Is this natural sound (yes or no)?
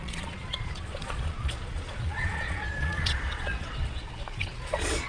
no